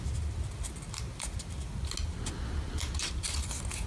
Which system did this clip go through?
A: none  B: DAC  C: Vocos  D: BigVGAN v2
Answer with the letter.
A